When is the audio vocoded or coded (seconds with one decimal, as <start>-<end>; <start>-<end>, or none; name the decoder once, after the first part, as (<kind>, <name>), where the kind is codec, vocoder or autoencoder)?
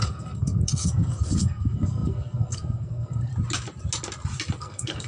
0.0-3.3 (codec, SNAC); 4.6-5.1